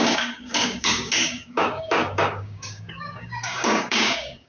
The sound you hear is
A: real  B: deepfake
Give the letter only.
B